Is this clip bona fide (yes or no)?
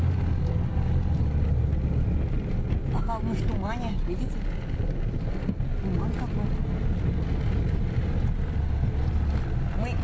yes